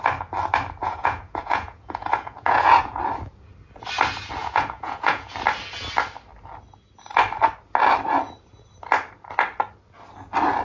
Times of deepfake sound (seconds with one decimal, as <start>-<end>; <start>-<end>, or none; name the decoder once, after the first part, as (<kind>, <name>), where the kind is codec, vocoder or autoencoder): 0.8-3.0 (vocoder, Vocos); 4.4-5.3